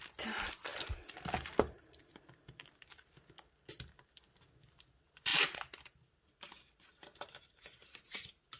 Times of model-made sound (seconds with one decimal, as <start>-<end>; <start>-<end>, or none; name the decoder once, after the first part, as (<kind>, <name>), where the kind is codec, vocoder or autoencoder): 5.3-8.6 (vocoder, BigVGAN v2)